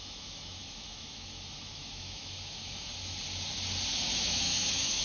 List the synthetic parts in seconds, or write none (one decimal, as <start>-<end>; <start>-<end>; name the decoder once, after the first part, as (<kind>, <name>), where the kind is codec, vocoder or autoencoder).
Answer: 0.0-2.9 (autoencoder, DAC-VAE); 4.0-5.0